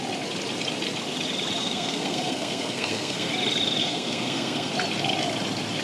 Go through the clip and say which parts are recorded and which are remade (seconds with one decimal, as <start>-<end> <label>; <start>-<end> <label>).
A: 0.0-1.6 recorded; 1.6-3.3 remade; 3.3-3.8 recorded; 3.8-4.7 remade; 4.7-5.8 recorded